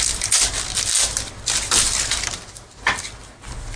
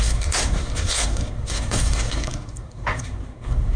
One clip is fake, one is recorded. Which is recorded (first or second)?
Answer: first